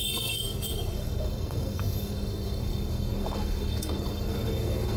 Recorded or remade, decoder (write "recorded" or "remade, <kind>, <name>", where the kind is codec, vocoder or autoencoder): remade, codec, SNAC